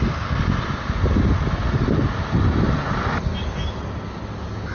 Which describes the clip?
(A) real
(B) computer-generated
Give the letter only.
A